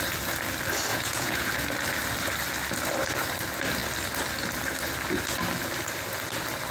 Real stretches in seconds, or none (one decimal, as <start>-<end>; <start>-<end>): 0.0-0.9; 1.5-6.7